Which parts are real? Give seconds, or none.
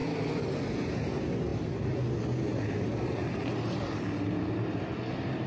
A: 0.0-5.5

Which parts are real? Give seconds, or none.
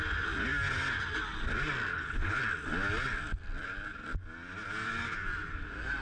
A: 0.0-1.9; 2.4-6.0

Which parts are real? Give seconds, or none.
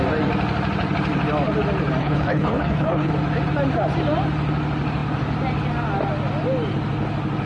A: 0.0-2.0; 3.1-7.5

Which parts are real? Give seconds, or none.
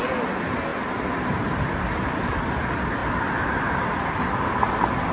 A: 0.0-5.1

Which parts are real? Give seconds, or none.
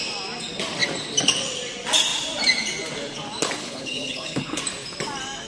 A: 0.0-3.6; 4.6-5.5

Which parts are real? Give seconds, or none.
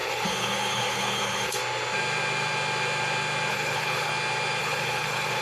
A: 1.6-3.5; 4.1-4.6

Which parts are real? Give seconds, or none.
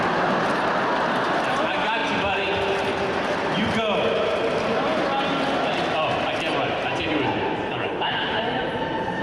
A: 0.0-7.7; 8.4-9.2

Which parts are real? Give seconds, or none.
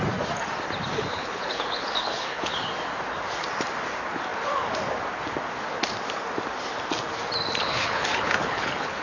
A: 0.0-1.1; 2.7-7.6